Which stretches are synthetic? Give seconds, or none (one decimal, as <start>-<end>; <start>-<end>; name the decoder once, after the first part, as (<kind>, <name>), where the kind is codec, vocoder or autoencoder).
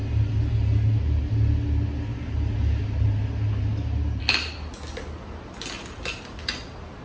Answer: none